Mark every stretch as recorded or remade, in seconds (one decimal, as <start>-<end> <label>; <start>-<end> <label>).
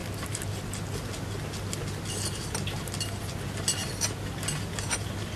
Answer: 0.0-5.4 recorded